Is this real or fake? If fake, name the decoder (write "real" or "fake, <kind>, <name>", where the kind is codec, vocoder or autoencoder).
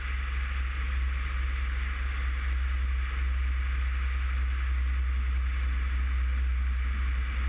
real